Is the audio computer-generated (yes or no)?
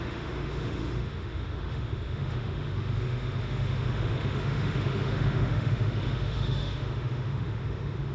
yes